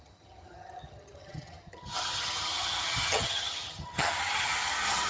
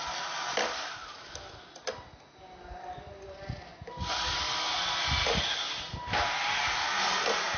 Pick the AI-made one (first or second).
first